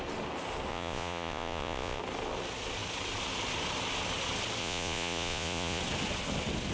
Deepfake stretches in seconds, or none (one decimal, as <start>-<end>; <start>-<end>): 0.7-2.0; 4.6-5.8